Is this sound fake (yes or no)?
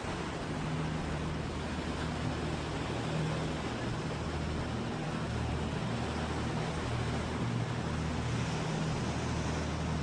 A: no